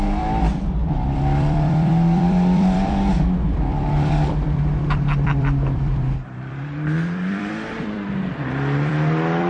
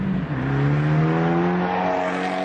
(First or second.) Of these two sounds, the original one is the second